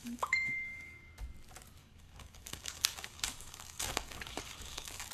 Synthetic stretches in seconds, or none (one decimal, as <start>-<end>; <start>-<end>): 0.0-1.1; 1.8-5.1